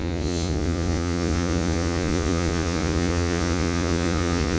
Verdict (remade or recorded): remade